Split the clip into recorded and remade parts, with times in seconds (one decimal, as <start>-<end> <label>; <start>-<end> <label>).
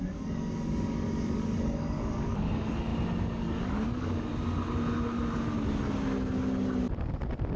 0.0-2.9 remade; 2.9-3.4 recorded; 3.4-4.3 remade; 4.3-7.6 recorded